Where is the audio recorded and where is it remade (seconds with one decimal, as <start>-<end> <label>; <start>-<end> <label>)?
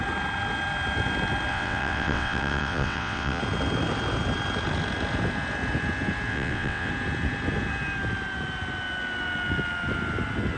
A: 0.0-1.5 recorded; 1.5-3.4 remade; 3.4-6.3 recorded; 6.3-6.9 remade; 6.9-10.6 recorded